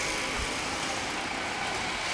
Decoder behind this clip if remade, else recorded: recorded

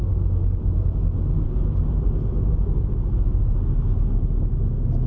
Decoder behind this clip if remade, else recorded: recorded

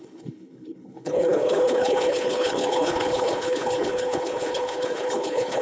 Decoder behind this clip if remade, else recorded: remade, codec, HILCodec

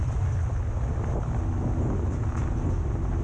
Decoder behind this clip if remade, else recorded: recorded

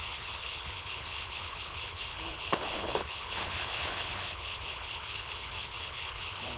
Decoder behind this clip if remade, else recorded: remade, codec, HILCodec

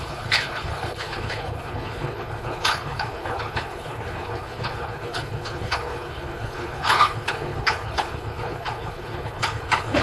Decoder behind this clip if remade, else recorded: remade, codec, HILCodec